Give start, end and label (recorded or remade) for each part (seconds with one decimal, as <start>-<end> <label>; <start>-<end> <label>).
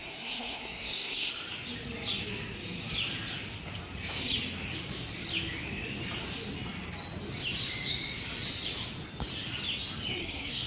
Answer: 0.0-1.3 remade; 1.3-10.2 recorded; 10.2-10.7 remade